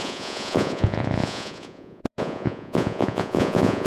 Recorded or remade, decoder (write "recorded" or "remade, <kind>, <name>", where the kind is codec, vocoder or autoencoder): remade, vocoder, Vocos